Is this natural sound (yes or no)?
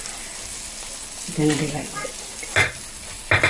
yes